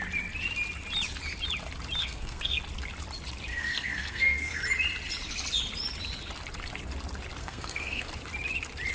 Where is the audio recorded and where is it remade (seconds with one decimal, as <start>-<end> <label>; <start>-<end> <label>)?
0.0-2.0 recorded; 2.0-2.6 remade; 2.6-3.5 recorded; 3.5-4.6 remade; 4.6-7.4 recorded; 7.4-8.1 remade; 8.1-8.9 recorded